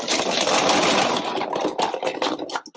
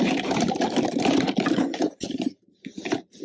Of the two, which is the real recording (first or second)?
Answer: first